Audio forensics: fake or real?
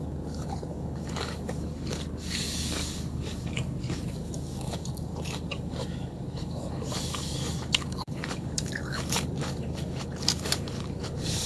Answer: fake